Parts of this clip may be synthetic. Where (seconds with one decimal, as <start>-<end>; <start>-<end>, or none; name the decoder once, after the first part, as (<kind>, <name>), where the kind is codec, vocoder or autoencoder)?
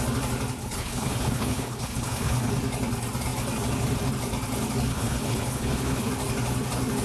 0.6-2.5 (codec, HILCodec); 4.9-6.1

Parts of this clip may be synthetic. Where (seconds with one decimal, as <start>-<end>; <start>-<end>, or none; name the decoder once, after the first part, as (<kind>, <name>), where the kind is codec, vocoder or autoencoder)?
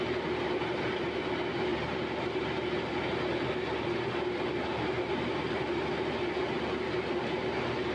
none